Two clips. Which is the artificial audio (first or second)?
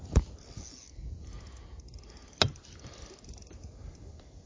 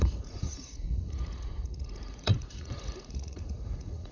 second